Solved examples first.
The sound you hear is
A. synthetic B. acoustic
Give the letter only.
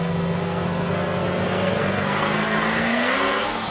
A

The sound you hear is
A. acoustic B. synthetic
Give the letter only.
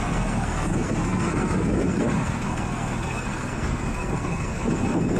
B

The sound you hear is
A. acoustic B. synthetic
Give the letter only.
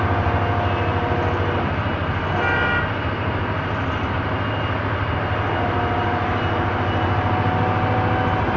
A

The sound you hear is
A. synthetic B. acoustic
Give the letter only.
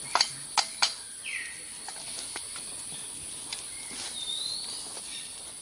B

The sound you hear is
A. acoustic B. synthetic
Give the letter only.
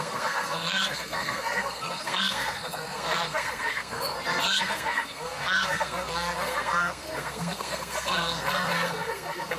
B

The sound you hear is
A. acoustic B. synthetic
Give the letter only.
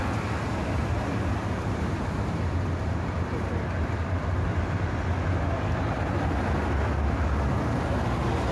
A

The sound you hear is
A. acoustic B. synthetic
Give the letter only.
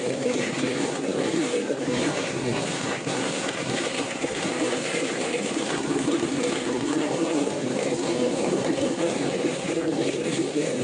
B